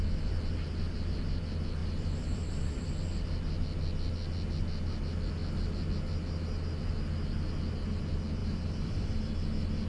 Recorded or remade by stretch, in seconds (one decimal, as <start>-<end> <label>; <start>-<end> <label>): 0.0-1.8 recorded; 1.8-2.9 remade; 2.9-8.4 recorded; 8.4-9.2 remade; 9.2-9.9 recorded